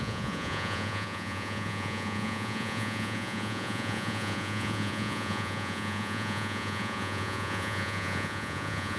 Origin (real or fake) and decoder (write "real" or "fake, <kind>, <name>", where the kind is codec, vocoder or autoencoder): fake, vocoder, Vocos